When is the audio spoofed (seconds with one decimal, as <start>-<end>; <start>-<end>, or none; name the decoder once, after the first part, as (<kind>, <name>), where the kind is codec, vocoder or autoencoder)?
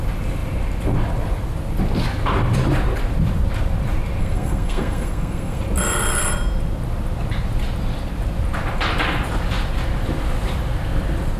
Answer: 4.2-5.6 (codec, SNAC)